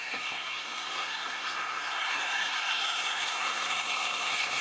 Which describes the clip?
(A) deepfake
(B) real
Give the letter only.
A